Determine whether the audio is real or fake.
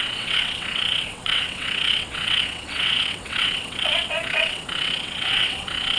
fake